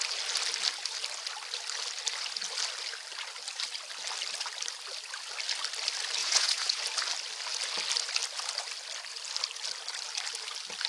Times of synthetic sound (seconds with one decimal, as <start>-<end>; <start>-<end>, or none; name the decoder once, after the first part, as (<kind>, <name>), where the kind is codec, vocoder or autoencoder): 6.2-6.8 (vocoder, Vocos)